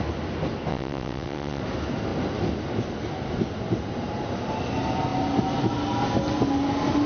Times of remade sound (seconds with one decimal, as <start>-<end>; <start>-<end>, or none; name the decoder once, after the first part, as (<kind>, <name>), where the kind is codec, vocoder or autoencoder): 0.7-1.6 (vocoder, WaveNeXt)